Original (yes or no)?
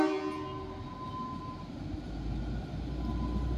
yes